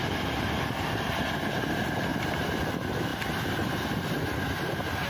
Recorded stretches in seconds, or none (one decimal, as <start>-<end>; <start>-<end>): 2.1-2.6